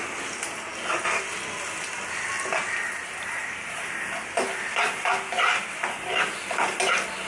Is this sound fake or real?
real